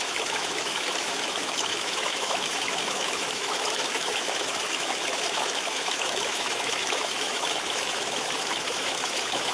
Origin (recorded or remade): remade